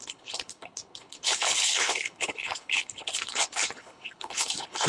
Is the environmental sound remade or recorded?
remade